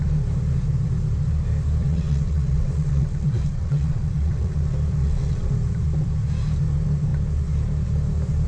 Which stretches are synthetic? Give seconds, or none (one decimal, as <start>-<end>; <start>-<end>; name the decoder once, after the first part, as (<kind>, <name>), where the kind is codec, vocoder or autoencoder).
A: 1.8-4.6 (vocoder, WaveNeXt); 5.0-5.5